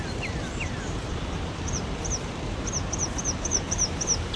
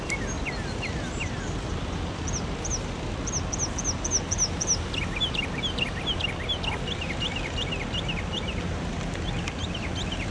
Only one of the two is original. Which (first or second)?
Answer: second